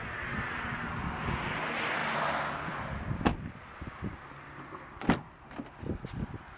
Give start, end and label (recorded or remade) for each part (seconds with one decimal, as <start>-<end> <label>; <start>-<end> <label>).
0.0-6.6 recorded